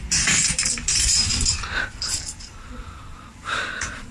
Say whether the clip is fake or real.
fake